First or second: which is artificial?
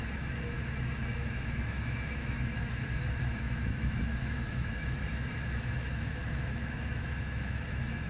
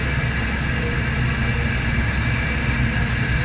first